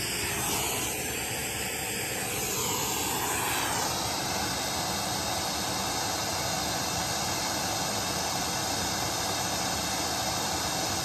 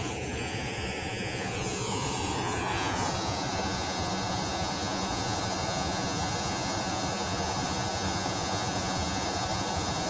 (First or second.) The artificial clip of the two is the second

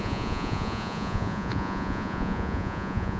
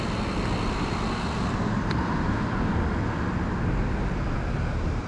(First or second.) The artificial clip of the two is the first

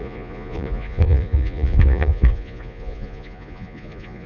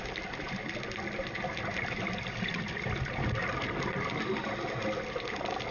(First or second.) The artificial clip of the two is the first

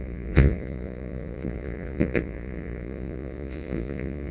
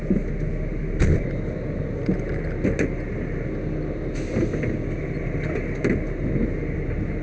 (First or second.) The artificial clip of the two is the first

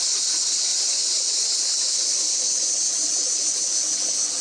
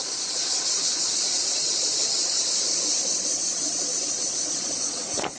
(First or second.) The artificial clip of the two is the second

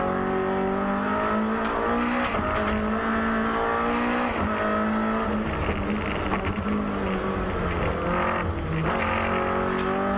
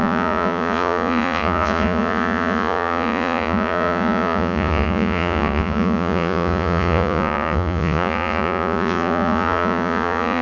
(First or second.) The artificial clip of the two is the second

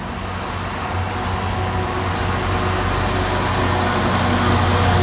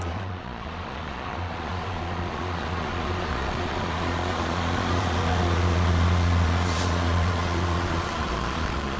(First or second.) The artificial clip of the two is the second